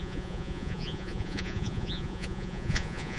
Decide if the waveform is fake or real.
fake